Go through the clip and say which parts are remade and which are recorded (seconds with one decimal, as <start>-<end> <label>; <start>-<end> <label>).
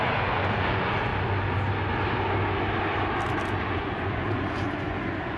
0.0-1.1 remade; 1.1-3.6 recorded; 3.6-5.4 remade